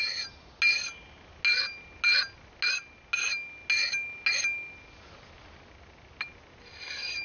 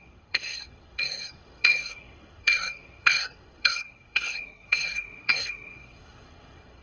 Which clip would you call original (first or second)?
first